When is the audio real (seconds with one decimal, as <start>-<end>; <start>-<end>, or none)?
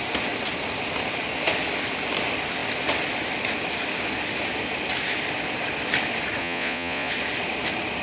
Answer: 0.0-6.4; 7.1-8.0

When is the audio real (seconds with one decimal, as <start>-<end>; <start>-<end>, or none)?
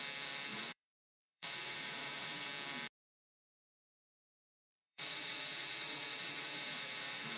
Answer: 0.0-0.5; 2.5-4.1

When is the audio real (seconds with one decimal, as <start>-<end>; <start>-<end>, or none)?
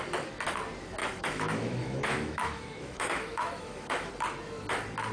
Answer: 0.0-1.0; 4.1-5.1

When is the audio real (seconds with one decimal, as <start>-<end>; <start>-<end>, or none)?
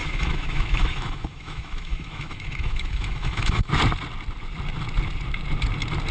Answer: 3.7-6.1